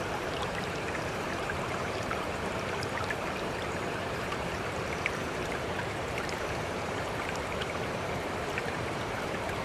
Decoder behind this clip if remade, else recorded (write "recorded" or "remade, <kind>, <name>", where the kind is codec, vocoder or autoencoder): remade, vocoder, BigVGAN v2